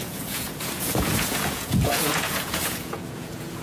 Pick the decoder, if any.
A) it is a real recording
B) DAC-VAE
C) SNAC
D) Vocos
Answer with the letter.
D